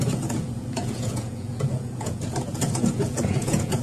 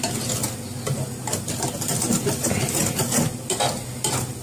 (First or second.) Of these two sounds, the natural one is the second